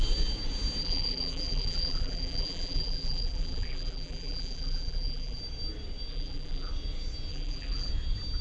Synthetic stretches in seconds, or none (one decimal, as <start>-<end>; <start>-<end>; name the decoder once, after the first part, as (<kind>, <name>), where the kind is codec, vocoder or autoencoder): 0.8-5.4 (vocoder, BigVGAN v2); 6.1-6.7; 7.3-7.9